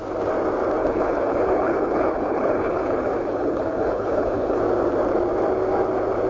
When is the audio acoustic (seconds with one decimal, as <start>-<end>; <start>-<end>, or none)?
0.0-0.8; 4.6-6.3

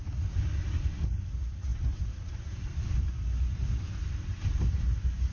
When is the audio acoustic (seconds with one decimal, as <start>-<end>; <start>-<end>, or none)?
0.0-5.3